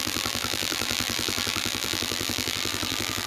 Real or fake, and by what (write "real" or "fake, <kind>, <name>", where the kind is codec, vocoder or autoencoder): fake, vocoder, BigVGAN v2